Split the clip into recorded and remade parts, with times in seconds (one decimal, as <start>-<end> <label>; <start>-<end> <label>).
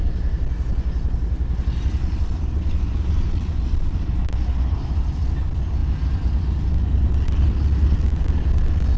0.0-9.0 recorded